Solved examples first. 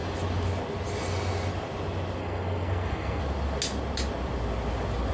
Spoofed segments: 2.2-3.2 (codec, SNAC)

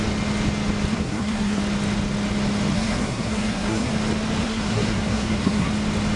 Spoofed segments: 0.9-1.6 (codec, SNAC); 2.7-3.9; 4.4-5.7

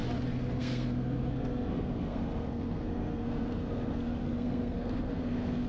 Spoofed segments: 0.6-5.7 (codec, SNAC)